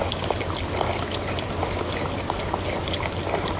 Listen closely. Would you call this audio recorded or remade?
recorded